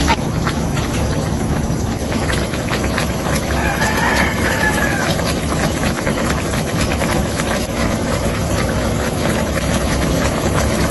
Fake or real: fake